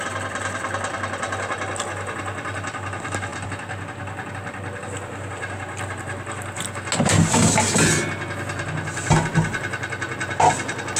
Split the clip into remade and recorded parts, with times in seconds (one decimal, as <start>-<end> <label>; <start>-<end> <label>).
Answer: 0.0-11.0 recorded